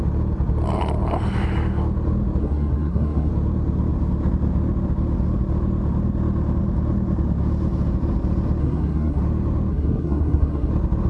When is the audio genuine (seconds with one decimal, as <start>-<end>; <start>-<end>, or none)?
0.0-2.4; 3.3-8.6; 9.2-9.7; 10.7-11.1